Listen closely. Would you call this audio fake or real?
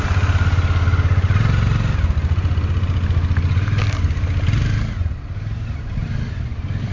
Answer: real